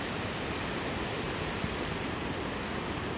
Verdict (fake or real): real